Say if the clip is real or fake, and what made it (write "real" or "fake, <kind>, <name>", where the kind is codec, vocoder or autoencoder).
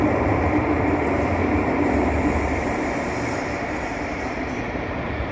fake, vocoder, BigVGAN v2